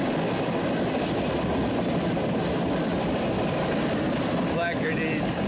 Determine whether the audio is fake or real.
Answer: real